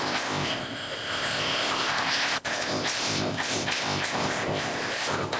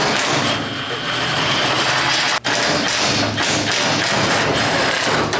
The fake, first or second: first